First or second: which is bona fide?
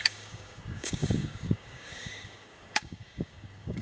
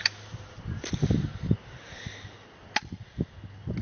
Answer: second